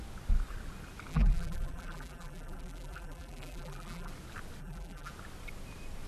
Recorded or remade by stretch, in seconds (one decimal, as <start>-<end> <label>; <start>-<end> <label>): 0.0-1.1 recorded; 1.1-4.1 remade; 4.1-4.6 recorded; 4.6-5.1 remade; 5.1-6.1 recorded